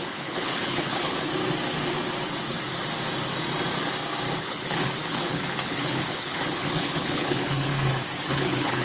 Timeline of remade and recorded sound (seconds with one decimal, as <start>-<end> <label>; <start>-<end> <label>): 0.0-1.3 remade; 1.3-4.4 recorded; 4.4-7.7 remade; 7.7-8.3 recorded; 8.3-8.8 remade